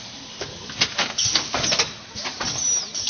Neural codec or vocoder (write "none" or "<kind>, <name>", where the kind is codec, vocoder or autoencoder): none